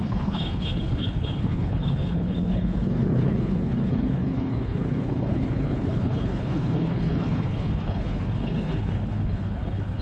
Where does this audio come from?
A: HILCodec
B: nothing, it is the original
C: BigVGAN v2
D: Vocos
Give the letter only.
A